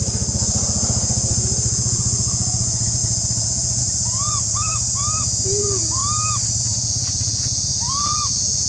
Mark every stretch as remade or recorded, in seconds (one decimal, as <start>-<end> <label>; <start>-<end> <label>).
0.0-4.7 remade; 4.7-5.6 recorded; 5.6-6.0 remade; 6.0-6.6 recorded; 6.6-8.7 remade